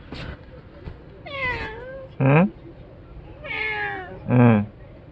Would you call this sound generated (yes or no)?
no